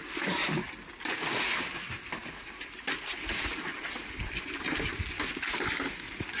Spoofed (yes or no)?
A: no